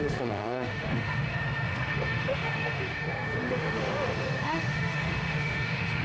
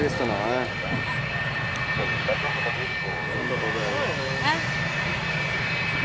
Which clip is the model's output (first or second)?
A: first